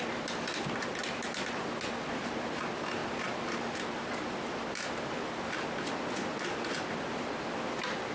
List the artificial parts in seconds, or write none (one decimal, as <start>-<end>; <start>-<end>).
none